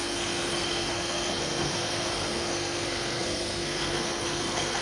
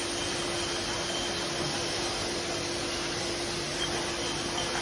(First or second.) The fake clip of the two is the first